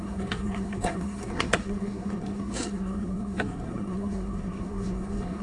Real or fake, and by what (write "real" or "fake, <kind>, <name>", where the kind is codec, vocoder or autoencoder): fake, codec, SNAC